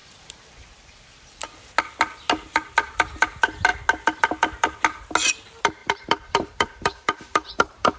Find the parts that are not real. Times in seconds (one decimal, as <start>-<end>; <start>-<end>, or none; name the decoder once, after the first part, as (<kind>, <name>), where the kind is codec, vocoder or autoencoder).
5.8-8.0 (vocoder, BigVGAN v2)